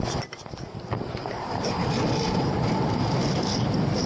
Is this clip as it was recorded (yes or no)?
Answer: no